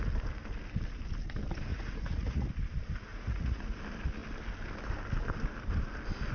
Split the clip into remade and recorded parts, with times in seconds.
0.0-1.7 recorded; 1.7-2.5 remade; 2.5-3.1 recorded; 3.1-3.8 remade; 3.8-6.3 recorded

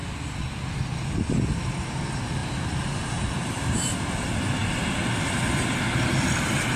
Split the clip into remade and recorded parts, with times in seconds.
0.0-6.8 recorded